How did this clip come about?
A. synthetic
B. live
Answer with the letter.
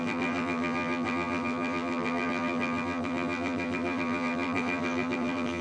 A